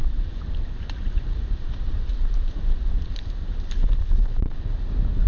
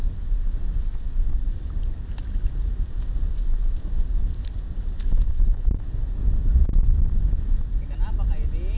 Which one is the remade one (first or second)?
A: first